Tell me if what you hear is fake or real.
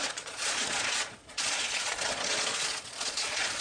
fake